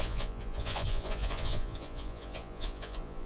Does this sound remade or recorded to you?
remade